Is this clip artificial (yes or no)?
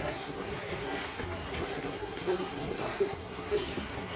yes